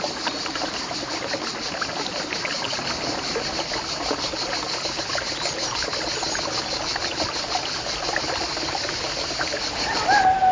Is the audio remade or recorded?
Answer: recorded